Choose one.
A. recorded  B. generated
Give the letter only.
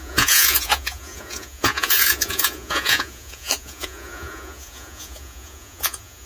B